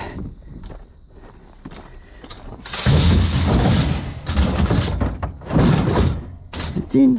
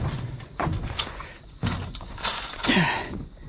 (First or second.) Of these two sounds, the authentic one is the first